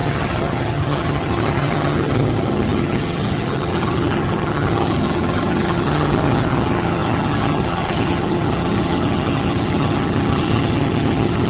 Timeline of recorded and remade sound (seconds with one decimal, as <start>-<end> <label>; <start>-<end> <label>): 0.0-11.5 remade